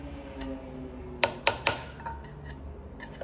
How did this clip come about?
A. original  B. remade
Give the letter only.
A